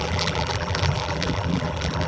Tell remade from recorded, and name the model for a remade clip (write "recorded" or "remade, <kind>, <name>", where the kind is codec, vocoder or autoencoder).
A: remade, vocoder, BigVGAN v2